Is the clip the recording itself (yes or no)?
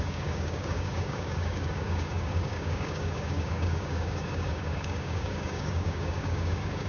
no